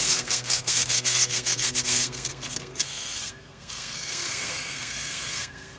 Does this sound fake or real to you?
fake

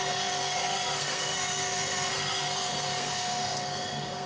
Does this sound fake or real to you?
fake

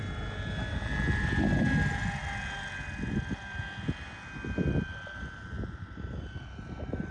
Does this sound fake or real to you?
real